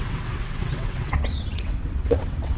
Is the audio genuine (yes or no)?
no